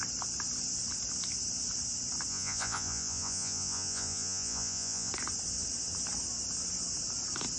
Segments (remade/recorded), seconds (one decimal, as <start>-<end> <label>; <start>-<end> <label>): 0.0-2.3 recorded; 2.3-5.1 remade; 5.1-7.6 recorded